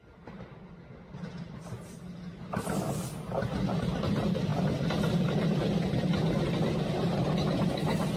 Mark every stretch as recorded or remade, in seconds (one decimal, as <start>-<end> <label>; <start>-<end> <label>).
0.0-8.2 recorded